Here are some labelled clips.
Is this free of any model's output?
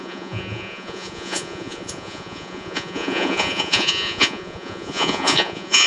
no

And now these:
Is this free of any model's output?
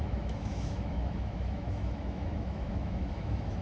no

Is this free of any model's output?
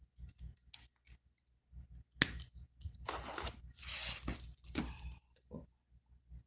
yes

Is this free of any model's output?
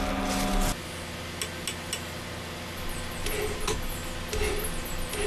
yes